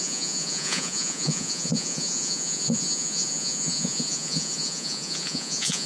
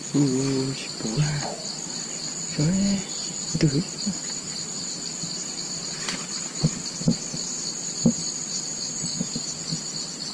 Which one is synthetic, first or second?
first